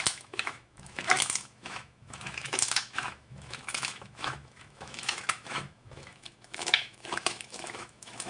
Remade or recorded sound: remade